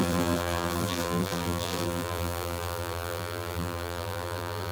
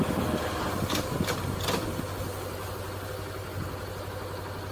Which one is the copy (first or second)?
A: first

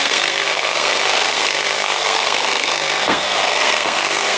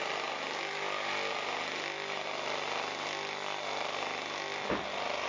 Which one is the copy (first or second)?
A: first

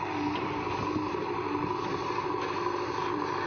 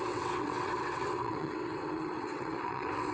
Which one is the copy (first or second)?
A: second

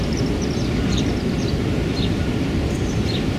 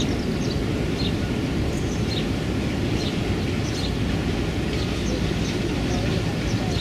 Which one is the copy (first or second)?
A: first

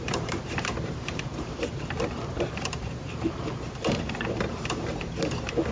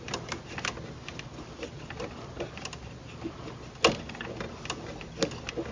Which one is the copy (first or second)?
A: first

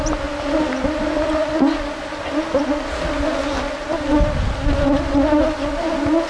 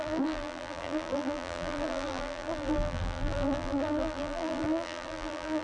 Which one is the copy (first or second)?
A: second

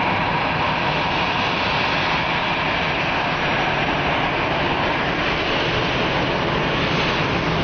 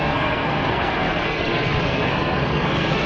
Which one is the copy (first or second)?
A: second